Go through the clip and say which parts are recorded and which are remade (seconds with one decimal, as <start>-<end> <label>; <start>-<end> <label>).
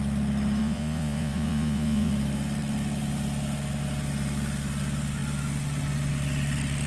0.0-0.6 recorded; 0.6-2.1 remade; 2.1-6.9 recorded